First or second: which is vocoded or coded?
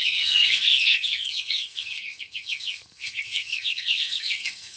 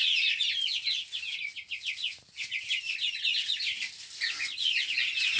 first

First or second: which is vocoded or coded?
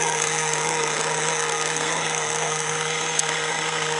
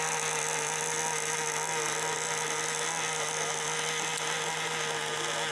first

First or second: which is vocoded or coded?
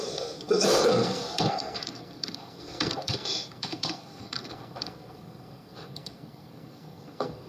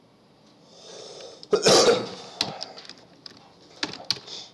first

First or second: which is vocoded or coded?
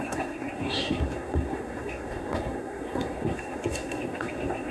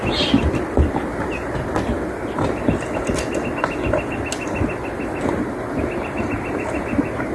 first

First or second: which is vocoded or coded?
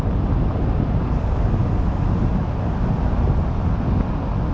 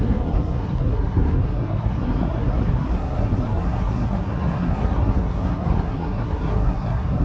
second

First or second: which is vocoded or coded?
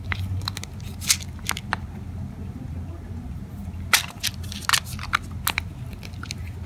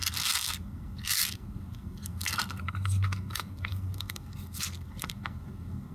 second